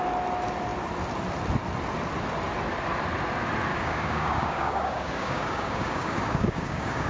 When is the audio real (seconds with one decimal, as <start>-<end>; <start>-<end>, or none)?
0.0-3.7